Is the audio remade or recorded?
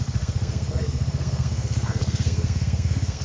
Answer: remade